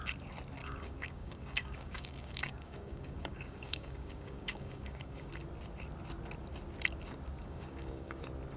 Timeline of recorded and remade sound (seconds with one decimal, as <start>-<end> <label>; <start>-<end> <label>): 0.0-0.6 recorded; 0.6-5.3 remade; 5.3-7.4 recorded; 7.4-8.2 remade; 8.2-8.6 recorded